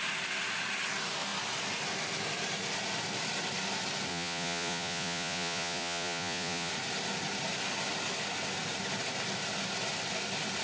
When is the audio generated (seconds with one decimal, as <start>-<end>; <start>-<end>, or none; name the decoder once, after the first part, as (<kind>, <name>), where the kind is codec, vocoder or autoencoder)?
4.1-6.7 (vocoder, Vocos)

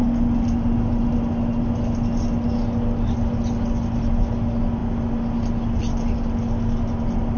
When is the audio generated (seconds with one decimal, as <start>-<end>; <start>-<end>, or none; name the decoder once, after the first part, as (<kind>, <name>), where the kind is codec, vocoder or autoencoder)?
none